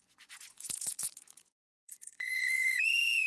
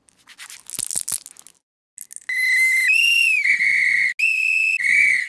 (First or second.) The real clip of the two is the second